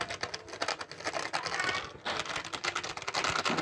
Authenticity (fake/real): real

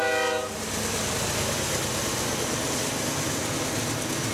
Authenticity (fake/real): real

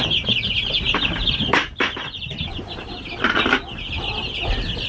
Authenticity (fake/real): real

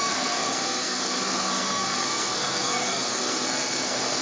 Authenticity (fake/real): fake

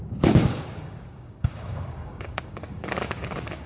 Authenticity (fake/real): fake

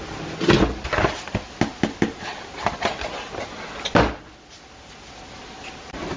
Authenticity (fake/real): real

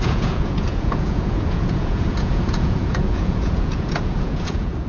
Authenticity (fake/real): fake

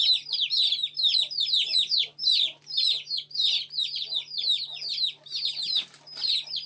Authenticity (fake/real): real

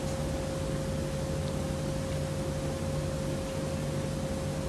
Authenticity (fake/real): real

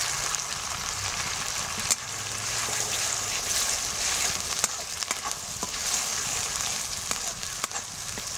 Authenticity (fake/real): real